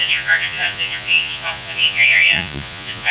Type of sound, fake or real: fake